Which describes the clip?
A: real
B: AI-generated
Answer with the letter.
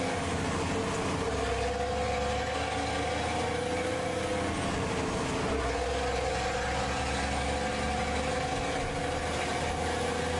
A